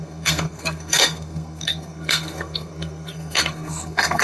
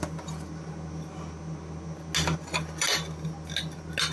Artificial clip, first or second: first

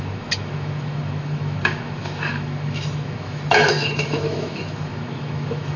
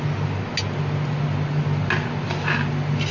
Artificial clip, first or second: first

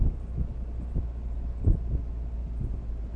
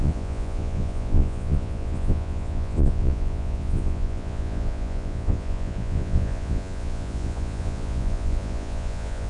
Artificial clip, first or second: second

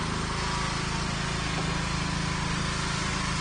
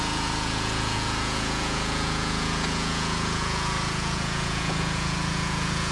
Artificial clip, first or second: second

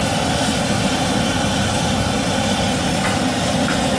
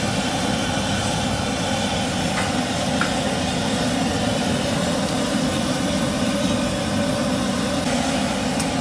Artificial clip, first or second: first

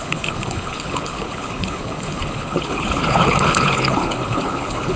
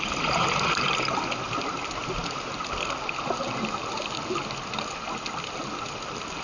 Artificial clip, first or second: first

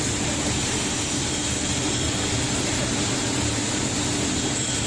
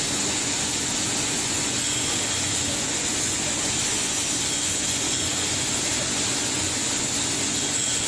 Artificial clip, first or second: second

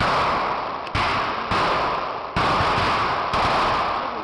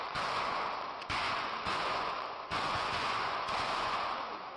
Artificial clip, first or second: second